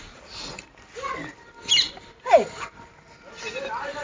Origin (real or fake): real